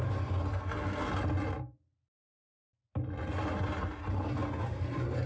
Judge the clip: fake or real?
real